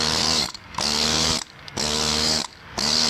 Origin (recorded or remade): remade